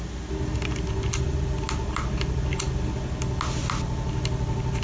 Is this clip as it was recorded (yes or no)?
yes